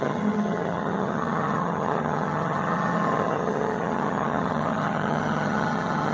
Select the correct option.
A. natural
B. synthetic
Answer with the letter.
B